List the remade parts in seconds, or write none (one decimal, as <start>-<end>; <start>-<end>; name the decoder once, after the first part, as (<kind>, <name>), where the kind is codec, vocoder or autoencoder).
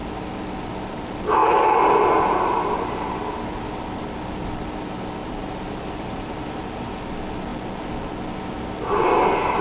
5.2-7.0 (vocoder, BigVGAN v2)